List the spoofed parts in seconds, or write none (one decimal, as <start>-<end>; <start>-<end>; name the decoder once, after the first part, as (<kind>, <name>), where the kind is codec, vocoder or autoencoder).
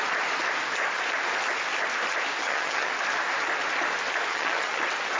2.4-2.9 (vocoder, HiFi-GAN); 4.3-4.8